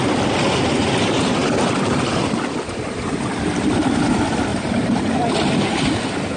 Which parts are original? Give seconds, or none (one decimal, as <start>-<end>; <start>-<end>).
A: 0.0-0.8; 2.3-4.5; 5.1-6.4